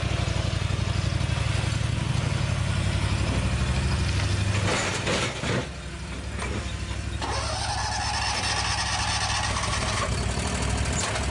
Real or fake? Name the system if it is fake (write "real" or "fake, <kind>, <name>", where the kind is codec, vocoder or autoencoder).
real